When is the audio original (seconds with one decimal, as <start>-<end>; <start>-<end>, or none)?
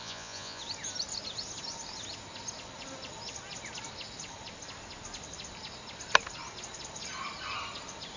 0.6-8.2